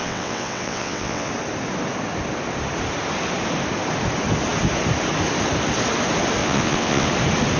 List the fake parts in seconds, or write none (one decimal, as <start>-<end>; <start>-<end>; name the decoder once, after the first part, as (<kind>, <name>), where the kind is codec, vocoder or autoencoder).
0.0-1.3 (vocoder, WaveNeXt); 6.4-7.1